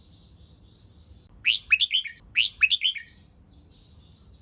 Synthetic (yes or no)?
no